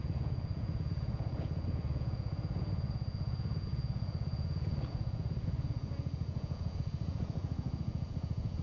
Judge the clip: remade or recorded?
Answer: remade